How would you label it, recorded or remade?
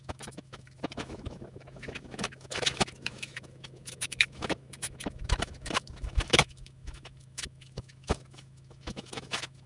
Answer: remade